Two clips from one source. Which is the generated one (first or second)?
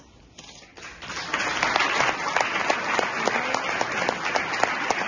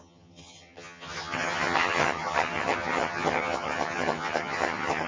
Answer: second